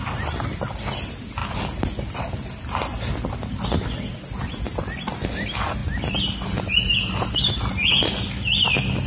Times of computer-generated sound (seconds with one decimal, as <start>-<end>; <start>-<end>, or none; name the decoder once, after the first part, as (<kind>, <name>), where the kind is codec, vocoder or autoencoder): none